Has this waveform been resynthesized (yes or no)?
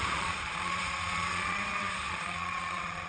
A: yes